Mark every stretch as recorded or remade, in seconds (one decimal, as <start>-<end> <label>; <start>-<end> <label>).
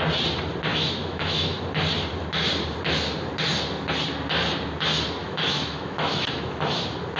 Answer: 0.0-0.7 recorded; 0.7-1.6 remade; 1.6-5.2 recorded; 5.2-6.8 remade; 6.8-7.2 recorded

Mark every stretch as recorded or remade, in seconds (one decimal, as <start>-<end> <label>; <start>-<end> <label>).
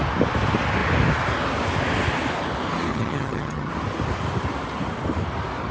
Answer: 0.0-2.9 recorded; 2.9-3.7 remade; 3.7-5.7 recorded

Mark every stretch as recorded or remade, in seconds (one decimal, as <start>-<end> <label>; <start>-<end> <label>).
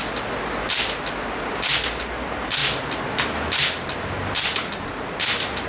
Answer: 0.0-5.7 recorded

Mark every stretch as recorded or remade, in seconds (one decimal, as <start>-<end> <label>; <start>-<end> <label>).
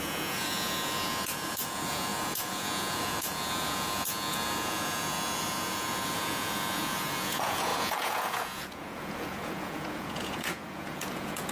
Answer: 0.0-11.5 remade